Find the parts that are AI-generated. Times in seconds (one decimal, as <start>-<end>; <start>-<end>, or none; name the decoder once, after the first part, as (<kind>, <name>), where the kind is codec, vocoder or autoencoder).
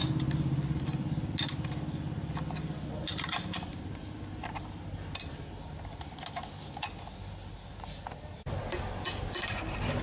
none